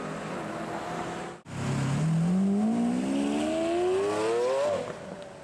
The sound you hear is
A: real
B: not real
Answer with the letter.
A